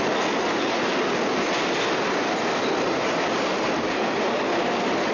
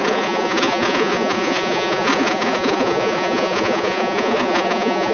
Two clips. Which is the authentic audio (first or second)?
first